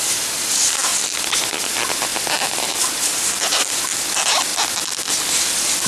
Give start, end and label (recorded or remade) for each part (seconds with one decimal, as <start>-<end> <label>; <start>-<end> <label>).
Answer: 0.0-0.9 remade; 0.9-1.4 recorded; 1.4-2.1 remade; 2.1-2.7 recorded; 2.7-4.5 remade; 4.5-5.4 recorded; 5.4-5.9 remade